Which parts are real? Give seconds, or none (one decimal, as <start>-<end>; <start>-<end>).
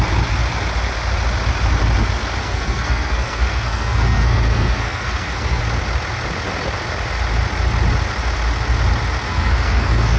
0.0-2.4; 5.6-9.3